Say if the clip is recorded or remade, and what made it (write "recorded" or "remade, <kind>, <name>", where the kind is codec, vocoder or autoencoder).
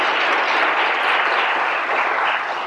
recorded